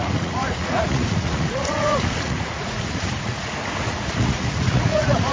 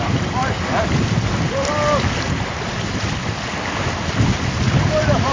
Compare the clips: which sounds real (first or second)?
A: second